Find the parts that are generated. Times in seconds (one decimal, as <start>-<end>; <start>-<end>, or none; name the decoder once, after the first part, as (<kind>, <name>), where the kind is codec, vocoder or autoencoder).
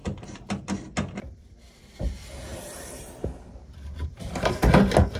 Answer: 0.0-0.6 (vocoder, BigVGAN v2); 2.5-4.5